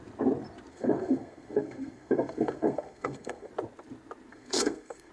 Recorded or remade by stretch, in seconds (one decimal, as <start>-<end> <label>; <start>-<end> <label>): 0.0-0.7 recorded; 0.7-3.5 remade; 3.5-4.3 recorded; 4.3-5.1 remade